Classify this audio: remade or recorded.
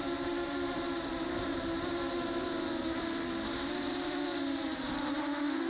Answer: remade